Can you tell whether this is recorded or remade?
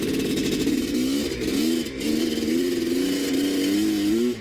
recorded